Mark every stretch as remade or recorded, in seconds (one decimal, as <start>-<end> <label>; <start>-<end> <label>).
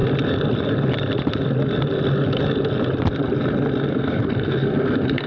0.0-3.9 recorded; 3.9-5.3 remade